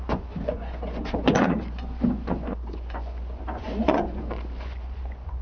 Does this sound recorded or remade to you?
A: remade